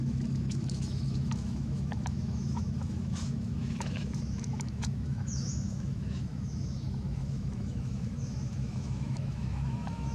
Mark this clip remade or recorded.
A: remade